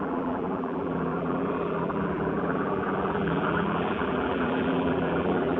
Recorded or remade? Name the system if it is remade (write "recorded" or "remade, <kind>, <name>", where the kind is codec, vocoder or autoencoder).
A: remade, vocoder, BigVGAN v2